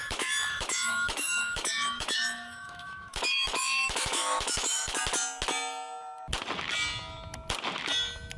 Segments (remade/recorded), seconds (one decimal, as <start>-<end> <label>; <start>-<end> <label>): 0.0-5.0 remade; 5.0-8.4 recorded

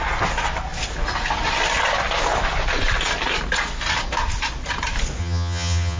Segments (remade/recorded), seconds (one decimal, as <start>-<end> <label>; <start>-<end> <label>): 0.0-5.2 recorded; 5.2-6.0 remade

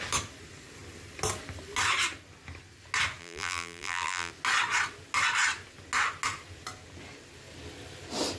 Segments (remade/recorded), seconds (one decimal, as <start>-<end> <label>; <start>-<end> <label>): 0.0-3.2 recorded; 3.2-4.3 remade; 4.3-8.4 recorded

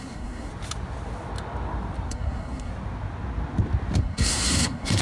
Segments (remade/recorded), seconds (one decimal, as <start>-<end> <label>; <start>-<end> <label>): 0.0-0.5 remade; 0.5-2.1 recorded; 2.1-2.7 remade; 2.7-4.0 recorded; 4.0-5.0 remade

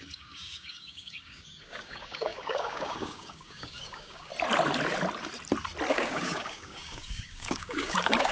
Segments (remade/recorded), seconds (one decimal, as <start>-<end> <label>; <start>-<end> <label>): 0.0-4.3 remade; 4.3-5.9 recorded; 5.9-8.3 remade